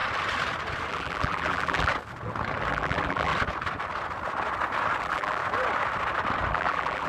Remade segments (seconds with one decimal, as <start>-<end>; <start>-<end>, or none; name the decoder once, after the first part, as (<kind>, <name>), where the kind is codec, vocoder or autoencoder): 0.9-1.9 (vocoder, BigVGAN v2); 2.7-3.3; 5.0-5.4; 6.5-7.1

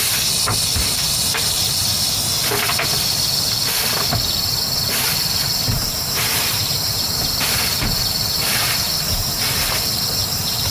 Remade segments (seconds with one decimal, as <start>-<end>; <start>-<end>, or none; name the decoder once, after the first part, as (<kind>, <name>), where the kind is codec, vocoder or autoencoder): 0.8-2.0 (vocoder, BigVGAN v2); 5.8-10.7

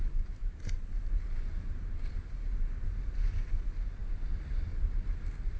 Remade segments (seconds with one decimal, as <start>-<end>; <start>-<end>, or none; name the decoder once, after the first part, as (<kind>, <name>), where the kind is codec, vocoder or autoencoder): none

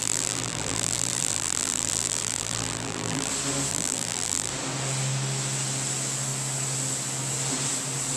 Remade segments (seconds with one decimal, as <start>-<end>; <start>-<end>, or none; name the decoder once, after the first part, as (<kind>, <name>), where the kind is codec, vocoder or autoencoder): 0.0-3.3 (vocoder, BigVGAN v2); 3.7-4.5

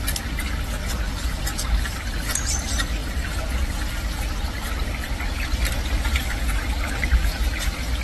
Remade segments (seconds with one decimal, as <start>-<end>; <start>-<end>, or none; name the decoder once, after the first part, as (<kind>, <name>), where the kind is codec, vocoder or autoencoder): 3.0-6.9 (vocoder, BigVGAN v2)

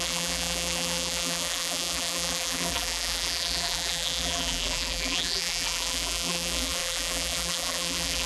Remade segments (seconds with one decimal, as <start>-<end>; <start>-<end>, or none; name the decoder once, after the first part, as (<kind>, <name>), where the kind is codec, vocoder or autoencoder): 0.0-8.3 (vocoder, BigVGAN v2)

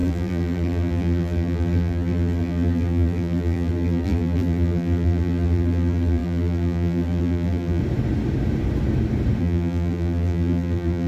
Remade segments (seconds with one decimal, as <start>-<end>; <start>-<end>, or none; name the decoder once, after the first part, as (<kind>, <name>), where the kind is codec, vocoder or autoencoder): 0.0-7.8 (vocoder, BigVGAN v2); 9.4-11.1